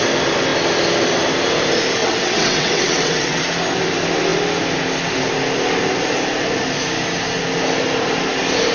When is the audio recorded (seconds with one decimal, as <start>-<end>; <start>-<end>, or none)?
0.0-2.0; 3.4-8.7